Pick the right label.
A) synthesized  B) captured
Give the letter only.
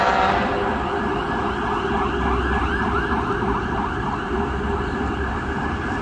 B